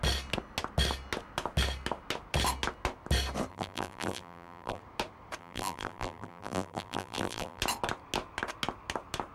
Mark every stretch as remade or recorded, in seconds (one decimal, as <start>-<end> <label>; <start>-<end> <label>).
0.0-3.5 recorded; 3.5-4.8 remade; 4.8-5.4 recorded; 5.4-7.6 remade; 7.6-9.3 recorded